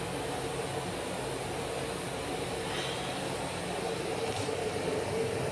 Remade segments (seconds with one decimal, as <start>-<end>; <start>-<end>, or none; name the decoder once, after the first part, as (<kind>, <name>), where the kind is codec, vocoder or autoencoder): 2.3-5.5 (vocoder, BigVGAN v2)